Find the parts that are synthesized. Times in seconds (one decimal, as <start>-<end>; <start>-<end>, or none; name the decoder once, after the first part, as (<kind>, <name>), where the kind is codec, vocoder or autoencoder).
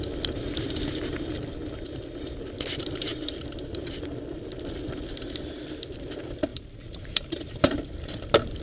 6.5-7.8 (vocoder, BigVGAN v2)